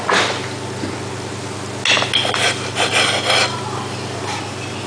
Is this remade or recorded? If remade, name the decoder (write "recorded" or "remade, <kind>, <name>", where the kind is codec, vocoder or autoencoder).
recorded